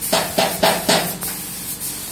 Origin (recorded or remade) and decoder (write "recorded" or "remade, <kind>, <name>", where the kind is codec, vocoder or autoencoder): recorded